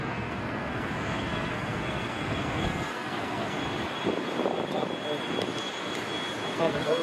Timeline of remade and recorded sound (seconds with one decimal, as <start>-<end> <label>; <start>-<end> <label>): 0.0-3.6 remade; 3.6-6.5 recorded; 6.5-7.0 remade